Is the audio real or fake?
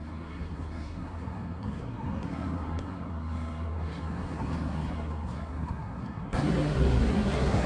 fake